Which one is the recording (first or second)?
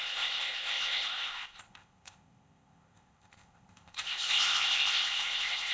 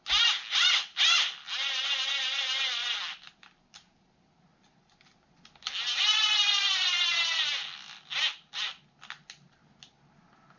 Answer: second